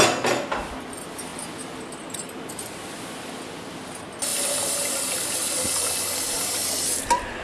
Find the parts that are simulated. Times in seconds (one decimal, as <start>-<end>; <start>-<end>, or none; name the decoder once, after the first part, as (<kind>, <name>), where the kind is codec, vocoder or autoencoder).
none